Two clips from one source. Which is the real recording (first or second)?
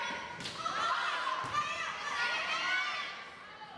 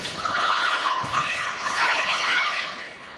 first